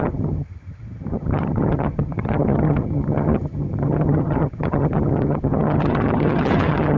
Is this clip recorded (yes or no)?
no